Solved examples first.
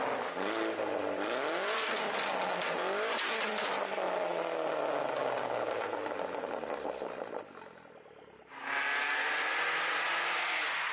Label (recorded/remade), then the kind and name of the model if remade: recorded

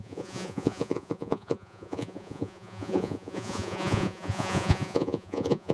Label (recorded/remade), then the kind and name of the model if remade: remade, vocoder, Vocos